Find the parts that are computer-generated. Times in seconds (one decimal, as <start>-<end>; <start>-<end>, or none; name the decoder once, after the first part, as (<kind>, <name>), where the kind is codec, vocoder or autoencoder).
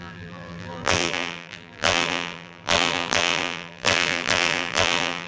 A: 0.0-5.3 (vocoder, BigVGAN v2)